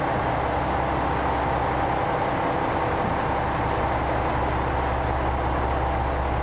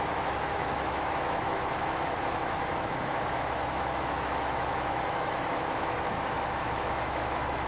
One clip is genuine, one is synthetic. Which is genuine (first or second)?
first